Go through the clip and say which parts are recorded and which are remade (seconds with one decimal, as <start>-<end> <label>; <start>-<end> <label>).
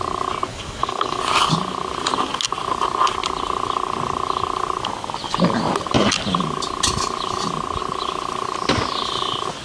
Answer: 0.0-0.5 recorded; 0.5-1.2 remade; 1.2-9.6 recorded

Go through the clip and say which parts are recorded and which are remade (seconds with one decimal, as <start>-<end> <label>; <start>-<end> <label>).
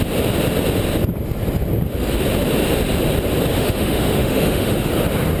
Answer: 0.0-3.5 recorded; 3.5-4.9 remade; 4.9-5.4 recorded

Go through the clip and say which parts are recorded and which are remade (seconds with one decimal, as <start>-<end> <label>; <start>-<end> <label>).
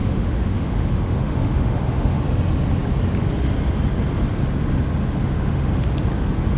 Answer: 0.0-2.2 remade; 2.2-5.0 recorded; 5.0-5.9 remade; 5.9-6.6 recorded